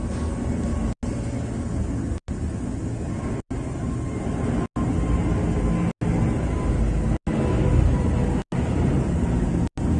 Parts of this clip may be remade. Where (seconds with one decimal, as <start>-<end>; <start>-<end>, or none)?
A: none